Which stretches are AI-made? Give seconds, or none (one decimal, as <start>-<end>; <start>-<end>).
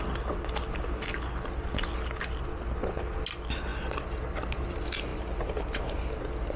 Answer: none